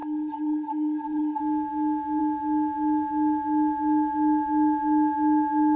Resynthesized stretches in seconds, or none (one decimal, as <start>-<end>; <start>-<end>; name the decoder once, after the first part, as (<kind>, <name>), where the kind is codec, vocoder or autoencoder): 0.0-1.4 (codec, SNAC)

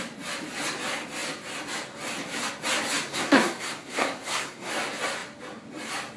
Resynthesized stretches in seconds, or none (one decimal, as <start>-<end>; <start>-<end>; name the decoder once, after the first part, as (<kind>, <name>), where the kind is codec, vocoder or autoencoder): 3.1-4.7 (codec, SNAC)

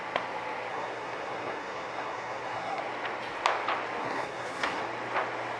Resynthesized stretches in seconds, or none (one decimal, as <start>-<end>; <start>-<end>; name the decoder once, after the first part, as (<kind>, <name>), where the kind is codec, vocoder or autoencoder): 0.7-2.8 (codec, SNAC); 4.0-4.8

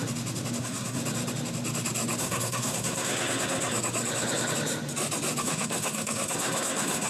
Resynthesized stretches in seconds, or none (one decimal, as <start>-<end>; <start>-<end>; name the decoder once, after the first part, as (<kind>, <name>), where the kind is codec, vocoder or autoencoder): 0.6-1.0 (codec, SNAC); 2.2-3.7; 5.4-7.1

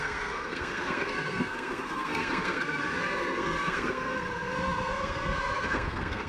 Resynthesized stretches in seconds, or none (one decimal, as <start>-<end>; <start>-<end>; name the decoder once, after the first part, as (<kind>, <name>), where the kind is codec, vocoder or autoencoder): 0.0-6.3 (codec, SNAC)

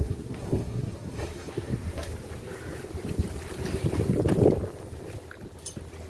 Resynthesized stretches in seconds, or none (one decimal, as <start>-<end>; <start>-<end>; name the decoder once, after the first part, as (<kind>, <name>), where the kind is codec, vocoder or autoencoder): 0.0-2.1 (codec, SNAC)

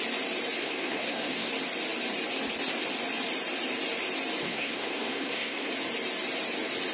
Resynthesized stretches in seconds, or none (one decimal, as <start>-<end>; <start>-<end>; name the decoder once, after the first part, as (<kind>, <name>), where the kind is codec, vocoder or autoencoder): 0.6-1.5 (codec, SNAC); 4.5-5.7